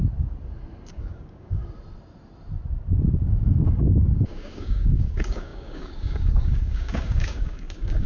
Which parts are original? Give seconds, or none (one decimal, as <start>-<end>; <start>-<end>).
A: 0.0-0.9; 1.6-3.2